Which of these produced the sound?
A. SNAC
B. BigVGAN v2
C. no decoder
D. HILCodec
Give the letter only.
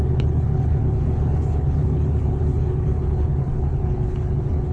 D